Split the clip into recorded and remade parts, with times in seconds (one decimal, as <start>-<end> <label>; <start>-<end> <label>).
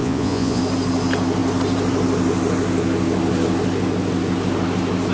0.0-0.6 remade; 0.6-5.1 recorded